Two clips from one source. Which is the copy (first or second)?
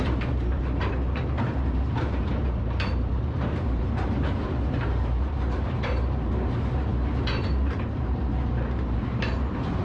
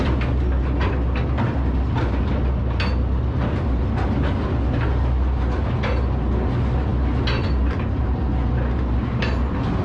first